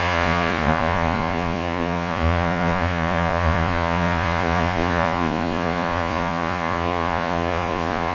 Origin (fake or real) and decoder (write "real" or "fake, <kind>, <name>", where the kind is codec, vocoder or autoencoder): fake, vocoder, Vocos